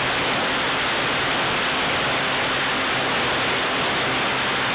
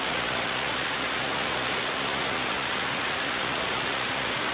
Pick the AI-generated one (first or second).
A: second